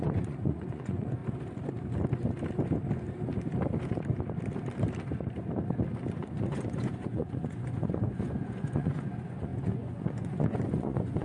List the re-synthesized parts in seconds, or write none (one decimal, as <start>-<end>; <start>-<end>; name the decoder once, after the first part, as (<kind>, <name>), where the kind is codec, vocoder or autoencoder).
0.0-1.2 (vocoder, Vocos); 6.1-11.2